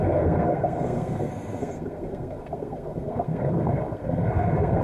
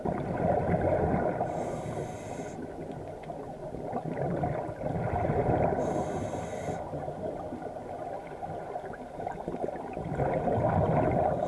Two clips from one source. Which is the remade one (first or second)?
first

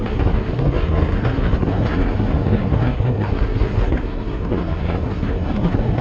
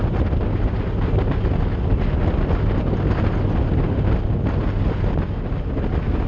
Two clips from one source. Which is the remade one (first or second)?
first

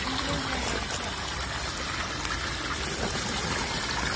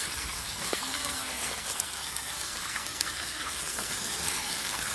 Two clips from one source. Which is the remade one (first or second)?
second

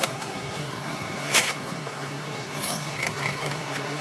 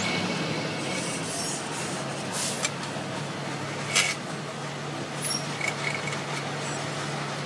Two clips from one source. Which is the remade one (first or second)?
first